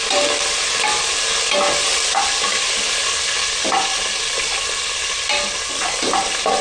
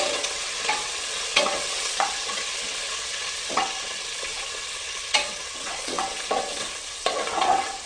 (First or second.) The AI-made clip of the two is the second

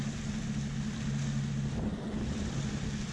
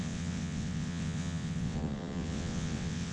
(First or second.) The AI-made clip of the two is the second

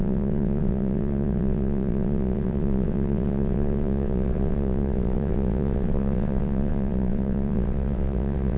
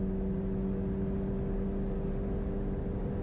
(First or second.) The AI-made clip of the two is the first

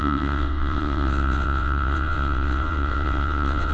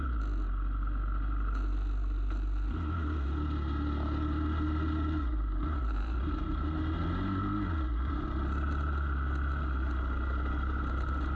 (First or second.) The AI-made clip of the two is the first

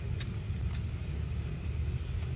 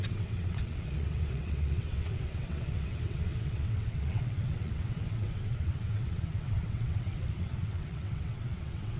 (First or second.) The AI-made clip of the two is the second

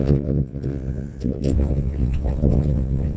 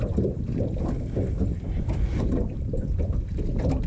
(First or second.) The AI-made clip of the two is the first